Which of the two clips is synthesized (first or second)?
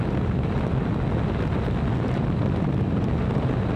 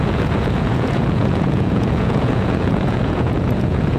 second